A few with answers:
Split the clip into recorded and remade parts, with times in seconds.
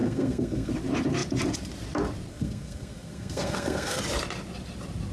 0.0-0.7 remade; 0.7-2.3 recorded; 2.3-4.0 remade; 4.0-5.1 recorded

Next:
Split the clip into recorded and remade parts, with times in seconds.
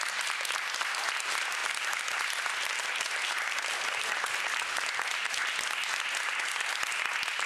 0.0-7.5 recorded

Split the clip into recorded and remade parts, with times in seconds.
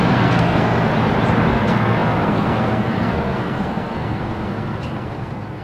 0.0-0.9 remade; 0.9-1.5 recorded; 1.5-5.6 remade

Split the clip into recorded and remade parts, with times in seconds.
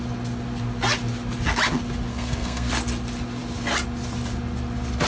0.0-2.1 recorded; 2.1-2.7 remade; 2.7-5.1 recorded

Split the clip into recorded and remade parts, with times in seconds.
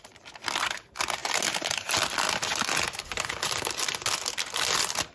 0.0-5.1 recorded